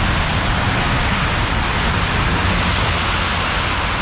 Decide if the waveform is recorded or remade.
recorded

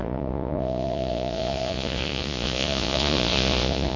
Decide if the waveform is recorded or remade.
remade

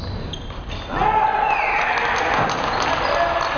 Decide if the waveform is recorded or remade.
recorded